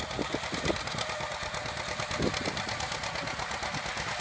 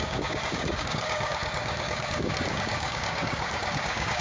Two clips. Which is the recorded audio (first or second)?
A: first